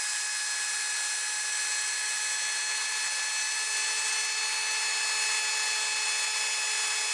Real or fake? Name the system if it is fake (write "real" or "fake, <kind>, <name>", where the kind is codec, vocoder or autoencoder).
real